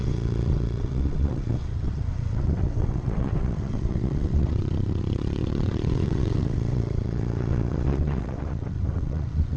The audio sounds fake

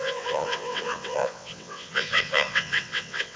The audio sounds fake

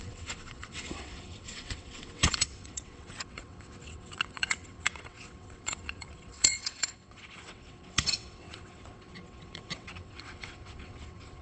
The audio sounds fake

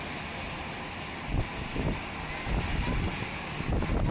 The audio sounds real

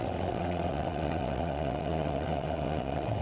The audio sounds fake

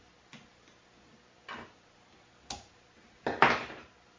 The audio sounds real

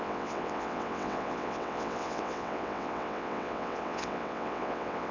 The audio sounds fake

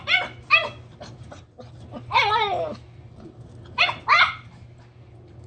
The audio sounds real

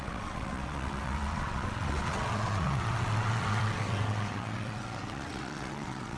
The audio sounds fake